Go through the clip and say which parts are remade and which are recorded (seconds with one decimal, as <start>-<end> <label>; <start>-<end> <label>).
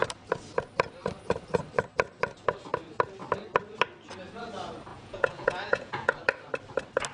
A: 0.0-4.9 recorded; 4.9-6.2 remade; 6.2-7.1 recorded